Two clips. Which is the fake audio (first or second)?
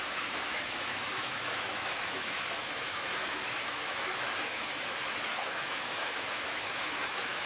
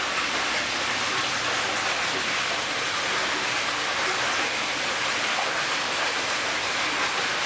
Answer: first